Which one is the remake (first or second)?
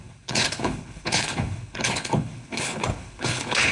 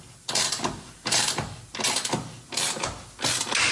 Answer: first